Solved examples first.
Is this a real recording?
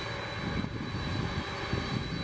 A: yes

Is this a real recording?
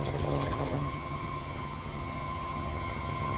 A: no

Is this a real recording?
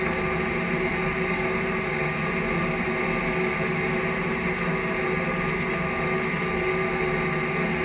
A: yes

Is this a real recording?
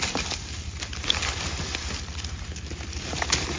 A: yes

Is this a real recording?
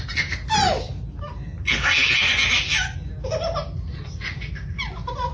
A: yes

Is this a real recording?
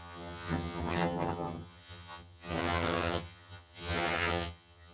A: no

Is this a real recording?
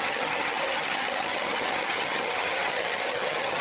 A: no